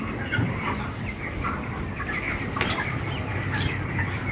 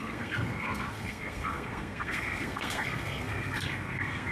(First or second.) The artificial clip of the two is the second